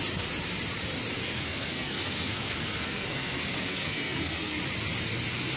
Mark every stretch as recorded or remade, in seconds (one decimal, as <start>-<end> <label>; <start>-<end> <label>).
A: 0.0-1.2 recorded; 1.2-4.6 remade; 4.6-5.6 recorded